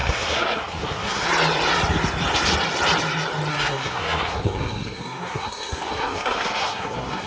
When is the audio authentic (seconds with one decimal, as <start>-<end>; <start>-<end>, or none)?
1.3-3.5